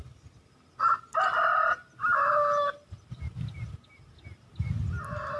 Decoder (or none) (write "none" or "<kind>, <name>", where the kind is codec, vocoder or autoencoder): none